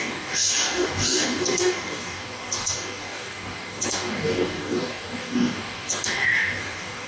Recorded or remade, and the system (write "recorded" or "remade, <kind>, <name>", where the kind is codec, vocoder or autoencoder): remade, codec, DAC